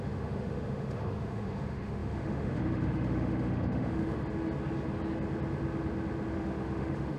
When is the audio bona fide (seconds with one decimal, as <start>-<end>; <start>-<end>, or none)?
4.2-6.3